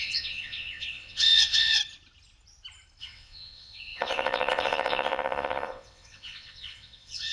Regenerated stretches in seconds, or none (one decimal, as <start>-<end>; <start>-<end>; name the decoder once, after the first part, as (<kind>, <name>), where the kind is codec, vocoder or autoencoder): 0.0-1.8 (vocoder, WaveNeXt); 3.0-7.3